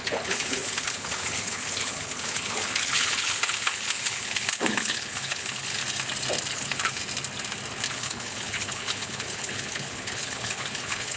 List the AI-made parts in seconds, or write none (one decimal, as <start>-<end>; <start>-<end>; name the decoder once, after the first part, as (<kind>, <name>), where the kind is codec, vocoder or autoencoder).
0.0-5.8 (codec, HILCodec); 6.5-7.0; 7.9-11.2